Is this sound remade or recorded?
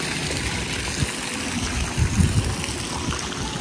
recorded